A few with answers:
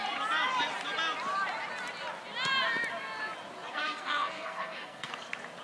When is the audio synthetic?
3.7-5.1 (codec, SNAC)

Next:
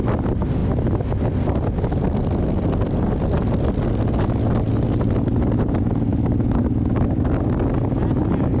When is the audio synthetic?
none

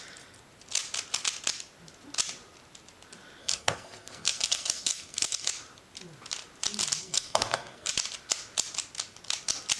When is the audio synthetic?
3.4-5.5 (codec, SNAC); 7.0-7.9